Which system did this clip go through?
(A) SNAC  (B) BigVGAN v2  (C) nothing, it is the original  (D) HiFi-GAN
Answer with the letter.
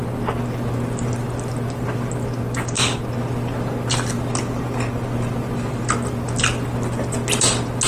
C